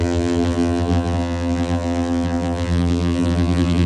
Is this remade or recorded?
remade